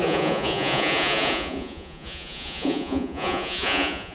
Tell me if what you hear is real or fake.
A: fake